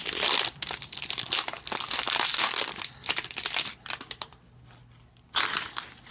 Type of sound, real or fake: real